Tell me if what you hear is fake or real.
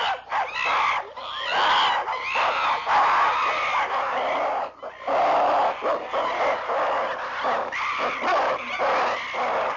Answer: real